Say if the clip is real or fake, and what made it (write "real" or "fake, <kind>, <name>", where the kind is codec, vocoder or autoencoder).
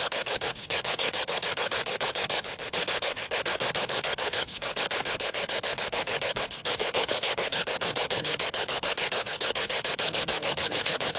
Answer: fake, codec, HILCodec